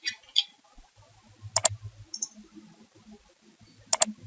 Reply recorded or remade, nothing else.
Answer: recorded